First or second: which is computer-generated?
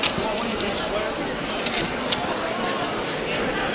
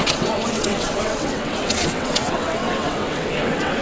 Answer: second